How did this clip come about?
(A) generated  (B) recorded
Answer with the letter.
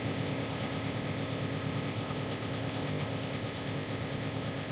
A